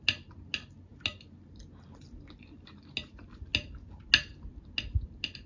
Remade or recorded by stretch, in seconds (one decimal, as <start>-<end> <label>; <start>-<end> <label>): 0.0-5.5 recorded